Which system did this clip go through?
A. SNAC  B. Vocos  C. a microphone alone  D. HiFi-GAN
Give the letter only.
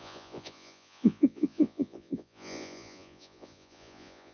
B